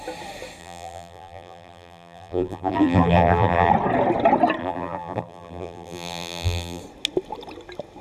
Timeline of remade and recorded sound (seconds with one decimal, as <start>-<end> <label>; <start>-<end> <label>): 0.0-0.6 recorded; 0.6-3.7 remade; 3.7-4.6 recorded; 4.6-6.8 remade; 6.8-8.0 recorded